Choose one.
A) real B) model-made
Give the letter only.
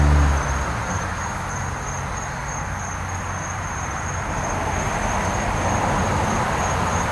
A